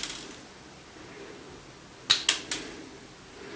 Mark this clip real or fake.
real